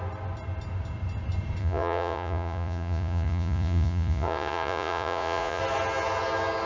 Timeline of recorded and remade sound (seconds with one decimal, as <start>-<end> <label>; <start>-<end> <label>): 0.0-1.6 recorded; 1.6-5.6 remade; 5.6-6.7 recorded